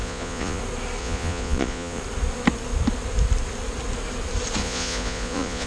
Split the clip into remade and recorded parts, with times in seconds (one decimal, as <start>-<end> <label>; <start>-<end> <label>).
0.0-0.6 remade; 0.6-1.0 recorded; 1.0-2.0 remade; 2.0-4.6 recorded; 4.6-5.7 remade